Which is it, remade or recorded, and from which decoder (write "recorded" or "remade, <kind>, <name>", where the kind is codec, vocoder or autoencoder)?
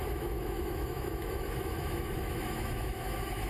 remade, autoencoder, DAC-VAE